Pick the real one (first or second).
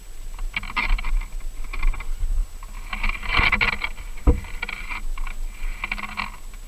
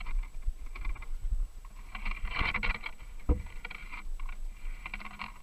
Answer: first